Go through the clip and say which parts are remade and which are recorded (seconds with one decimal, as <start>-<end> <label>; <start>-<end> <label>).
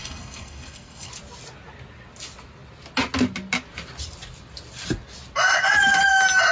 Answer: 0.0-1.1 remade; 1.1-6.5 recorded